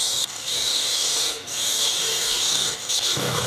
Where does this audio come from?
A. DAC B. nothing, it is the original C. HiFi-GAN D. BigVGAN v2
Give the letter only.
A